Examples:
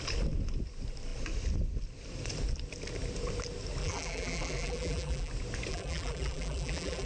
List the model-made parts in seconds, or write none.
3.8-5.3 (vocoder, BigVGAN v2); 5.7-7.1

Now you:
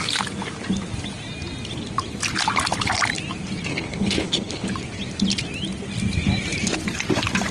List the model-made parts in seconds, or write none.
3.7-4.7 (codec, HILCodec)

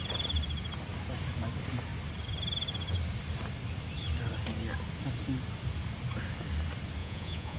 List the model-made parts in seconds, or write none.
7.0-7.6 (vocoder, Vocos)

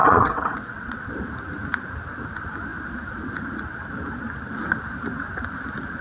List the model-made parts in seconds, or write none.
0.0-1.1 (vocoder, WaveNeXt)

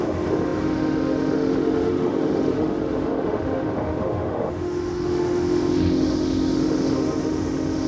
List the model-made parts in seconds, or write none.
0.0-7.9 (autoencoder, DAC-VAE)

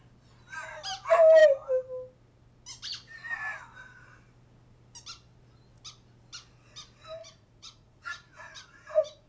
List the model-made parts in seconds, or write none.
7.2-9.3 (vocoder, Vocos)

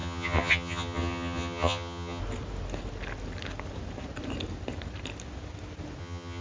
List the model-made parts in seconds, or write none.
0.0-2.2 (vocoder, HiFi-GAN); 6.0-6.4